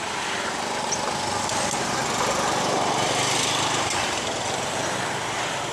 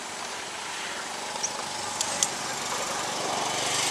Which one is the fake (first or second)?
first